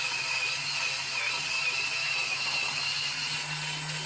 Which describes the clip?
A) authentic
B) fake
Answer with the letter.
A